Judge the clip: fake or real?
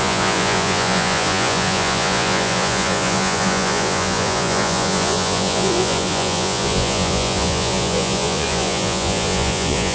fake